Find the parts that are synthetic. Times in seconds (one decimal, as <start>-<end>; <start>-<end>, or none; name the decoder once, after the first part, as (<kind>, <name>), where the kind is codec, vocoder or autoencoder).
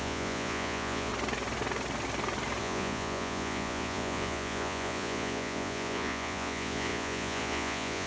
0.0-1.1 (vocoder, Vocos); 2.6-8.1